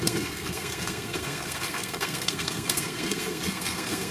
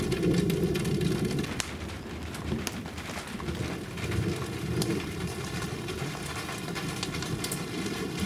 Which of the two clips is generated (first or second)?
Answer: first